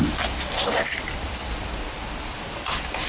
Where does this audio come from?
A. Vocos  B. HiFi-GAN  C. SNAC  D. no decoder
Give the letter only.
D